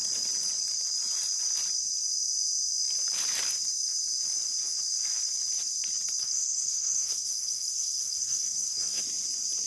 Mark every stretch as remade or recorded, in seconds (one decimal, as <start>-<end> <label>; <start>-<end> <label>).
0.0-6.2 recorded; 6.2-9.0 remade; 9.0-9.7 recorded